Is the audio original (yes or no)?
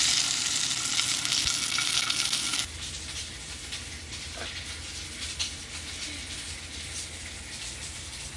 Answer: yes